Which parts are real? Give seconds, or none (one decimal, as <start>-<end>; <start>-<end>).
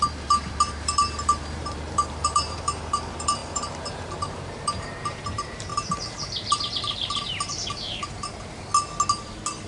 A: 8.7-9.7